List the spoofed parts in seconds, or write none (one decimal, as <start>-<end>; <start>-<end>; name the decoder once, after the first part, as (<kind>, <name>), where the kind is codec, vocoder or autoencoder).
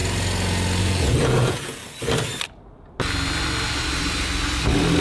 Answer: 0.8-1.8 (vocoder, Vocos)